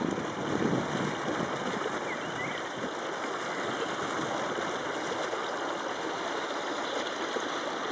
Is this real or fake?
real